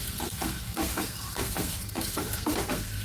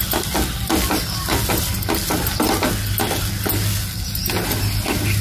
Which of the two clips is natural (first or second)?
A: second